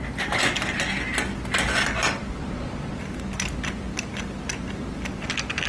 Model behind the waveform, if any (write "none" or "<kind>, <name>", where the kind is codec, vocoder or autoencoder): none